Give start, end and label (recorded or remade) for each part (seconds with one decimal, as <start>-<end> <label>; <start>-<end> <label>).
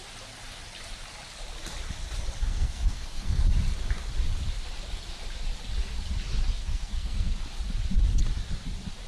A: 0.0-2.4 recorded; 2.4-3.4 remade; 3.4-6.6 recorded; 6.6-7.4 remade; 7.4-9.1 recorded